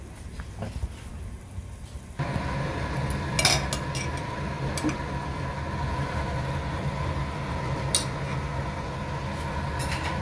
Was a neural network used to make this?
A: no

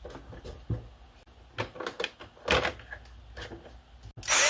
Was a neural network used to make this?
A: no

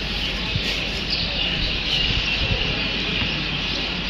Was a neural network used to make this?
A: no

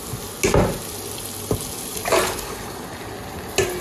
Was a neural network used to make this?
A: no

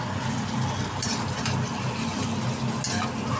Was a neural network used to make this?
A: no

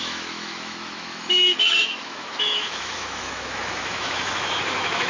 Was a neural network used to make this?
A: yes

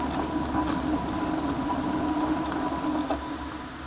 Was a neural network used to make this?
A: no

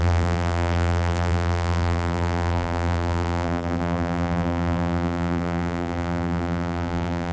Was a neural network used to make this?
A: yes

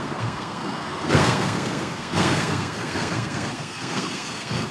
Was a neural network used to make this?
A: yes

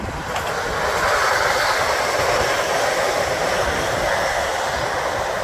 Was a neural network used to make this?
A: no